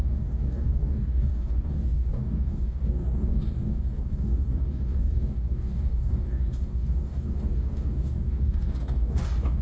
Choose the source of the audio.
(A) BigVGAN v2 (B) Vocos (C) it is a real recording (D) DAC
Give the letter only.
D